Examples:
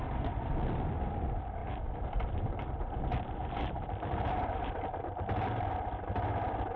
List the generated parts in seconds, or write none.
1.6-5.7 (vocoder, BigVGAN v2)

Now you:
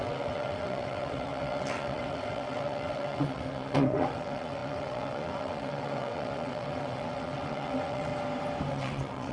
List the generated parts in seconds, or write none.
0.0-8.1 (vocoder, WaveNeXt); 8.7-9.3

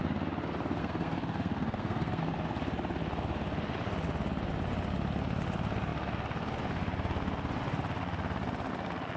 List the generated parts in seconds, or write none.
0.8-2.2 (codec, SNAC)

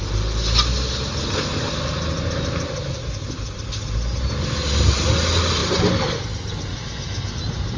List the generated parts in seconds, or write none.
6.7-7.3 (autoencoder, DAC-VAE)

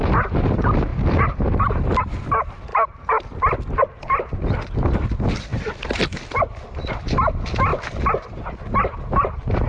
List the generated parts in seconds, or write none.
none

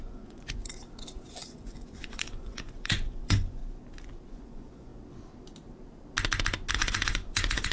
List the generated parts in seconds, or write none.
0.0-0.6 (vocoder, Vocos); 1.3-3.6; 4.3-4.9; 6.7-7.7

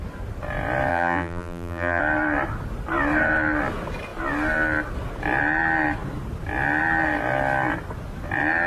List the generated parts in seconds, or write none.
0.9-2.0 (vocoder, BigVGAN v2)

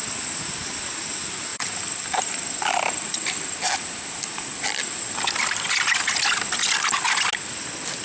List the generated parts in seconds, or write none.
1.5-5.1 (vocoder, BigVGAN v2)